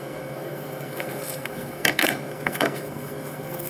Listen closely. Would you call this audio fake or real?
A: fake